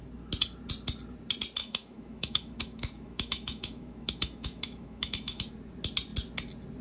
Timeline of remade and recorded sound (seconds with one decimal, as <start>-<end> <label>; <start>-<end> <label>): 0.0-1.6 recorded; 1.6-5.5 remade; 5.5-6.8 recorded